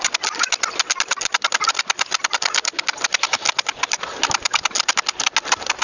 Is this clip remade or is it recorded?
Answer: recorded